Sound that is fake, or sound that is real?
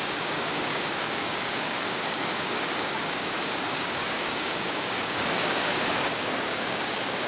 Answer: fake